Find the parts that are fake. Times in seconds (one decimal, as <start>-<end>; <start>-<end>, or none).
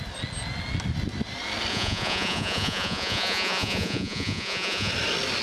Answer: 1.7-4.9